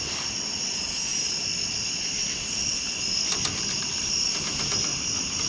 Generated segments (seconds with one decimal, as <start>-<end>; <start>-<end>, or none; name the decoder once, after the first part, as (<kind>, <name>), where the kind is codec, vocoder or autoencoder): 0.0-4.9 (vocoder, BigVGAN v2)